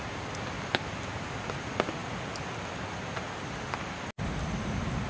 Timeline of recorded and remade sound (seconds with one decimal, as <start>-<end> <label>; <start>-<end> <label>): 0.0-5.1 recorded